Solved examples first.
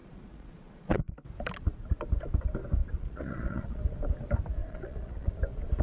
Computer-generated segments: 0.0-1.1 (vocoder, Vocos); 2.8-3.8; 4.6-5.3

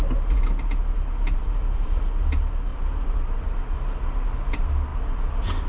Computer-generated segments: 1.4-2.0 (vocoder, BigVGAN v2); 2.7-3.5